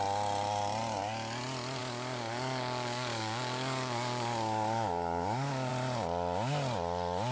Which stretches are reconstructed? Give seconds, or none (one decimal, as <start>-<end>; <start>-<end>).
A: 1.8-5.7

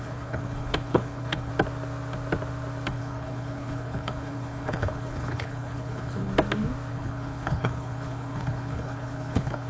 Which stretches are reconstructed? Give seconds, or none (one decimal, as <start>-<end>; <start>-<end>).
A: 0.0-1.5; 2.9-6.3; 6.9-9.7